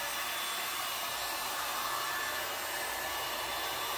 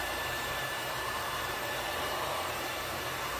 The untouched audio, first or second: first